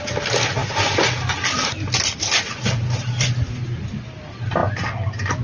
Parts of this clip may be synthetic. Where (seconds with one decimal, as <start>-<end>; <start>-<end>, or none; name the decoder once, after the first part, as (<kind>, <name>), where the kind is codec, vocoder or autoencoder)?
none